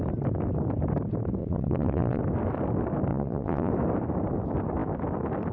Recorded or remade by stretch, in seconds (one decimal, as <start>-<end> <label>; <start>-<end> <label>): 0.0-1.4 recorded; 1.4-2.2 remade; 2.2-3.1 recorded; 3.1-3.7 remade; 3.7-5.5 recorded